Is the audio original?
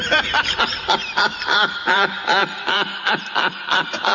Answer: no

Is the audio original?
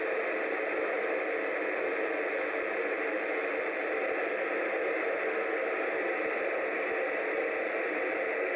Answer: yes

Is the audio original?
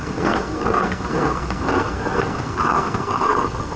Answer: no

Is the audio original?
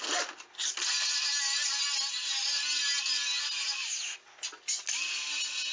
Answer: yes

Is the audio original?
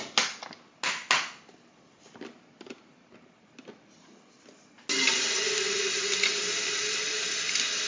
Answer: yes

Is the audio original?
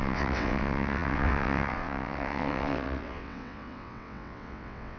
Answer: no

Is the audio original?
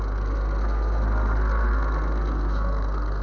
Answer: no